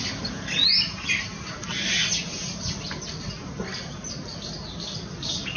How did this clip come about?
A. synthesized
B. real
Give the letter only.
B